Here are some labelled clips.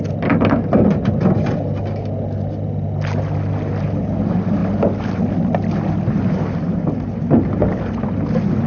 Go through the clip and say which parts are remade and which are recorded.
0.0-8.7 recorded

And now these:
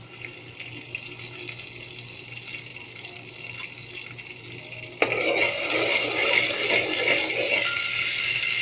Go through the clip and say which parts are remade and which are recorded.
0.0-8.6 recorded